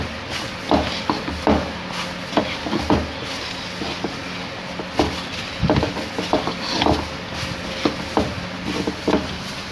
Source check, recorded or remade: recorded